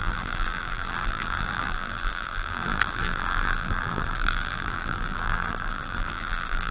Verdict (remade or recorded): remade